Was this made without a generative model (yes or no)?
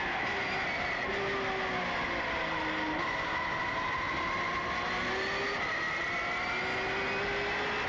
yes